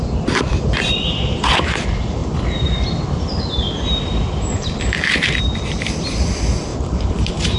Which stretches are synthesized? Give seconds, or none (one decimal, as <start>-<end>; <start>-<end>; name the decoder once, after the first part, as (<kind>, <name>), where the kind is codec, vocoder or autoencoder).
6.7-7.6 (vocoder, BigVGAN v2)